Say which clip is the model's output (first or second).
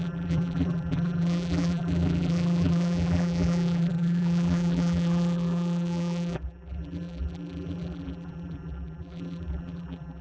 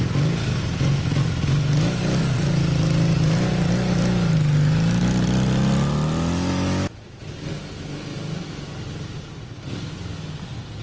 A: first